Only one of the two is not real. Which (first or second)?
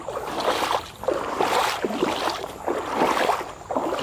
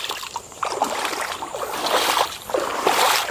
second